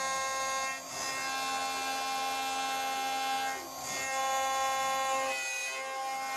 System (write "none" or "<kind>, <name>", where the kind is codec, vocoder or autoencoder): none